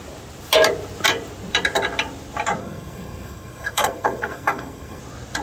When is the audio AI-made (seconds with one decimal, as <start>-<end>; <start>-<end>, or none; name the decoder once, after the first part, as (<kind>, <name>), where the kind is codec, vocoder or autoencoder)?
2.6-5.0 (codec, SNAC)